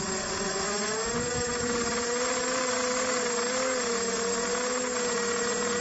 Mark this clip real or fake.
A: real